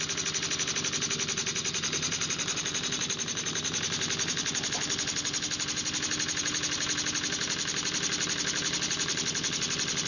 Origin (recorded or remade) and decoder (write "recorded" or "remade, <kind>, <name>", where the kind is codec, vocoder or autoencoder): recorded